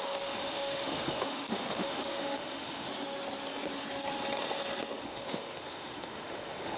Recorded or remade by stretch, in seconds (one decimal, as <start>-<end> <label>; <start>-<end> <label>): 0.0-2.9 remade; 2.9-5.0 recorded; 5.0-6.8 remade